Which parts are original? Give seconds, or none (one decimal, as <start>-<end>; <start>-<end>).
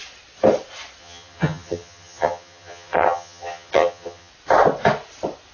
0.0-1.0; 4.3-5.5